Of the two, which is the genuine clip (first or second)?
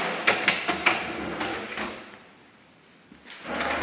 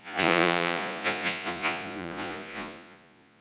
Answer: first